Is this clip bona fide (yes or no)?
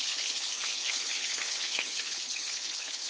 no